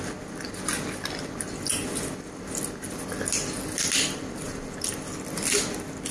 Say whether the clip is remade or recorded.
recorded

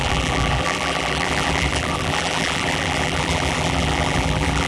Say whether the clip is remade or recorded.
remade